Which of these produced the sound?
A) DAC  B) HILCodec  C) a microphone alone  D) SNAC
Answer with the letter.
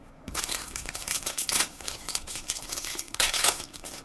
D